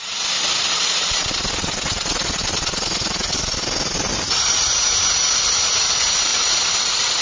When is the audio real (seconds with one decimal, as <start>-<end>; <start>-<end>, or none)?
0.0-7.2